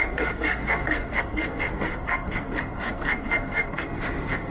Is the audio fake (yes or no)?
yes